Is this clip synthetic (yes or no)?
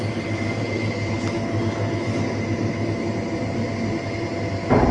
no